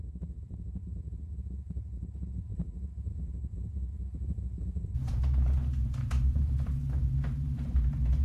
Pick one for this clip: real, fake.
fake